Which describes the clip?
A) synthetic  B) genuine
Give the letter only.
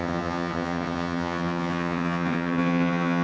A